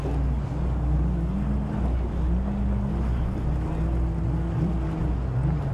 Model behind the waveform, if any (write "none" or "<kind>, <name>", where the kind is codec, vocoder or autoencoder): none